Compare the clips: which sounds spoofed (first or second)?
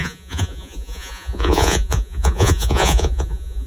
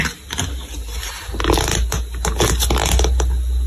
first